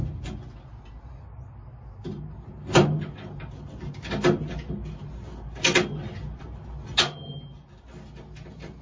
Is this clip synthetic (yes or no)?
no